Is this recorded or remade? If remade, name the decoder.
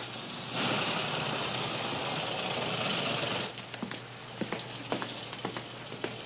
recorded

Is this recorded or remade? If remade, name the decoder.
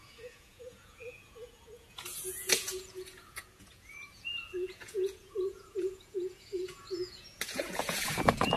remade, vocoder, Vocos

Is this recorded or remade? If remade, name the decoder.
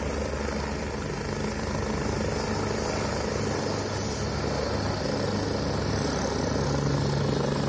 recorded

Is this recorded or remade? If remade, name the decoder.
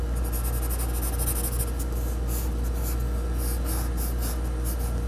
recorded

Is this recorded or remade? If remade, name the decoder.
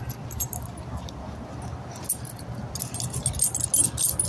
recorded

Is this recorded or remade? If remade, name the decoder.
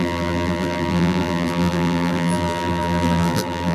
remade, vocoder, BigVGAN v2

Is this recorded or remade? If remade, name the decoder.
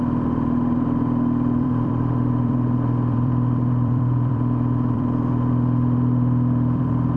remade, vocoder, BigVGAN v2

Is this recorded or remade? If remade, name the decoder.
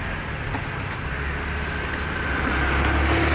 recorded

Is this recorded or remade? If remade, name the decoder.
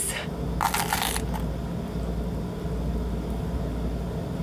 recorded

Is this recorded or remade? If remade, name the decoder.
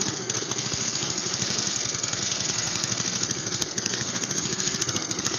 remade, codec, SNAC